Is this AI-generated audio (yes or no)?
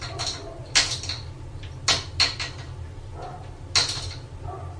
no